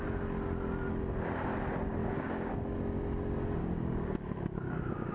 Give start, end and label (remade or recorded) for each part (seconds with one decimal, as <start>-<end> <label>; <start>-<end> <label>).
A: 0.0-2.0 recorded; 2.0-2.8 remade; 2.8-3.6 recorded; 3.6-5.1 remade